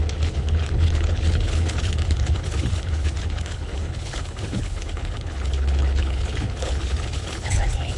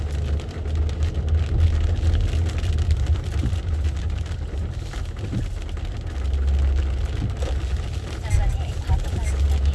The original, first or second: second